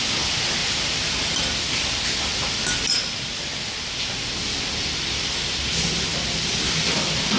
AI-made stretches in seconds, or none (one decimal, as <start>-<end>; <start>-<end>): 0.6-1.4